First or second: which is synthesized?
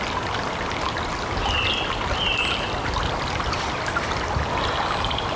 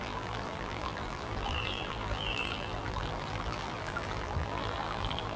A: second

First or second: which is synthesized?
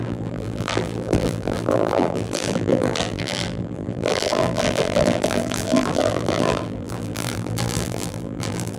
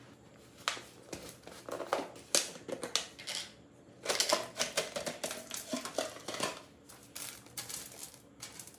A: first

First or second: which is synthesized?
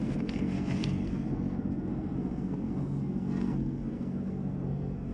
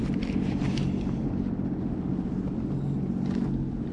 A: first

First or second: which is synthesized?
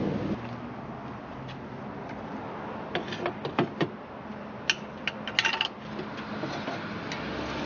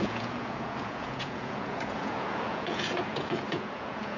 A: second